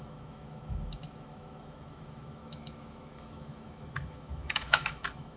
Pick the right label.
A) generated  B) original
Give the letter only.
A